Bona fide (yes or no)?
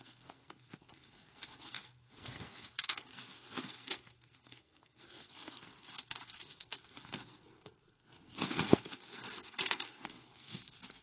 no